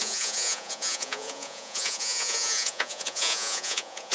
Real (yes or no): no